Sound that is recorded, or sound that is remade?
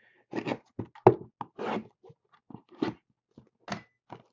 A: recorded